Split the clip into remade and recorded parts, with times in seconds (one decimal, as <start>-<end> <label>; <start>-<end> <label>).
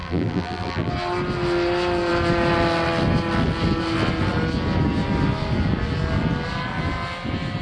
0.0-0.9 remade; 0.9-7.6 recorded